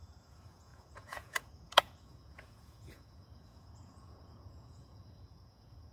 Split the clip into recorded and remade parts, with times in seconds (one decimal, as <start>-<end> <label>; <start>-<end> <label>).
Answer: 0.0-5.9 remade